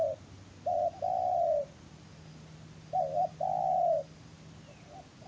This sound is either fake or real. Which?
real